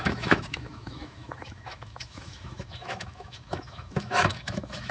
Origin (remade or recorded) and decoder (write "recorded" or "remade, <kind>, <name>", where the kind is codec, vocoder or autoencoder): remade, autoencoder, DAC-VAE